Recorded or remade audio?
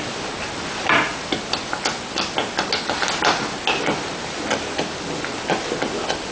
recorded